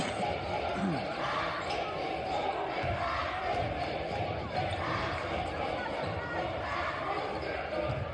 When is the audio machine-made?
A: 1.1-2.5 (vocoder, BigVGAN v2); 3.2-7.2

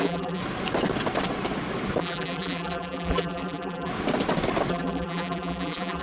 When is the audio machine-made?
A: 0.0-0.4 (vocoder, BigVGAN v2); 2.0-3.9; 4.7-6.0

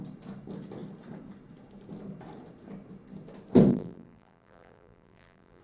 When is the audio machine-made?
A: 3.7-5.6 (vocoder, BigVGAN v2)